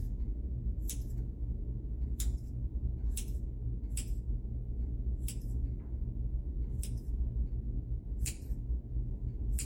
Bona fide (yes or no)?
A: yes